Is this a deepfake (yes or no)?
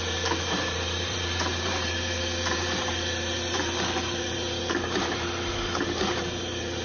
yes